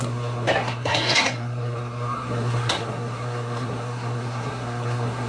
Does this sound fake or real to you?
fake